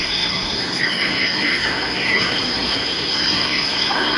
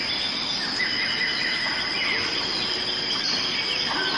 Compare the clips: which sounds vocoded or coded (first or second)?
first